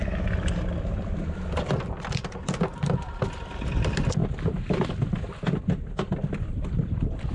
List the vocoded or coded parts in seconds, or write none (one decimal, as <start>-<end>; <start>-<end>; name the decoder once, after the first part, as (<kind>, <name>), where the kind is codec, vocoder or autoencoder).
none